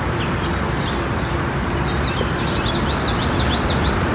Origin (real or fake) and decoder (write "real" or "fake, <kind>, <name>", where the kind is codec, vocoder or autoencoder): real